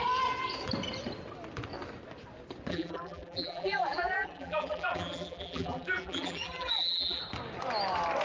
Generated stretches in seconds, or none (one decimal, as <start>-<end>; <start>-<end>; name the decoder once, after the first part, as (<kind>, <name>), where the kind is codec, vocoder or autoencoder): 2.7-7.2 (vocoder, BigVGAN v2)